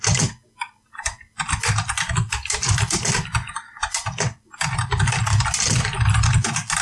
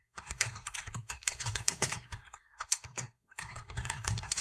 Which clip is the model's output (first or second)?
second